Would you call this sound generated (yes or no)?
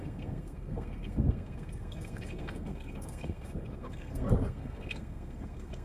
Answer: yes